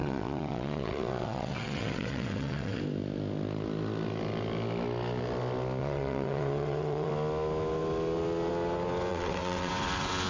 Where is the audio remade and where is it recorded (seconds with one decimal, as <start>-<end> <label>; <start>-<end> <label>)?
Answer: 0.0-2.8 remade; 2.8-5.8 recorded; 5.8-7.1 remade; 7.1-9.1 recorded; 9.1-9.7 remade; 9.7-10.3 recorded